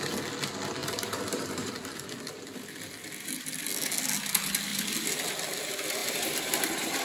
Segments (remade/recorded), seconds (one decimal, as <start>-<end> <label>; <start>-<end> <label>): 0.0-0.8 recorded; 0.8-1.7 remade; 1.7-6.0 recorded; 6.0-7.0 remade

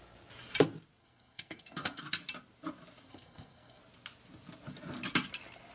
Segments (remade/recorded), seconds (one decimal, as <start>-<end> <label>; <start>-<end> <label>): 0.0-1.0 recorded; 1.0-2.0 remade; 2.0-3.1 recorded; 3.1-3.8 remade; 3.8-5.7 recorded